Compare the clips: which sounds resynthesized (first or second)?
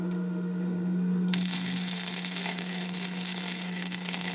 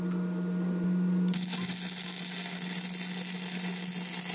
first